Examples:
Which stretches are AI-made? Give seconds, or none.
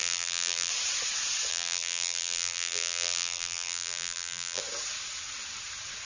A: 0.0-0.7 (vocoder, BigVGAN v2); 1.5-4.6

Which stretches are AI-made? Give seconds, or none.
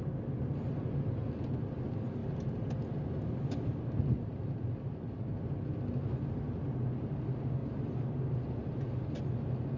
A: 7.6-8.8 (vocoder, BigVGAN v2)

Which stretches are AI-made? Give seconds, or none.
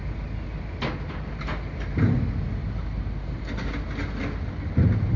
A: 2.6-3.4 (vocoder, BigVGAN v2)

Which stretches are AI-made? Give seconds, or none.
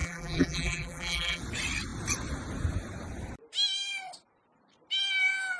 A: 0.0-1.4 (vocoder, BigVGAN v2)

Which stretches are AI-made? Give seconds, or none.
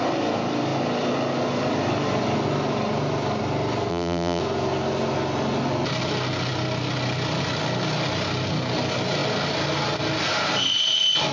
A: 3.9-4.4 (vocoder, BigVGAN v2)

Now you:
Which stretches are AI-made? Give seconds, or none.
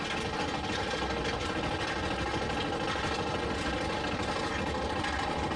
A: none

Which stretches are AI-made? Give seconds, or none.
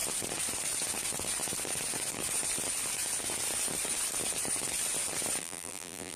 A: 5.4-6.2 (vocoder, BigVGAN v2)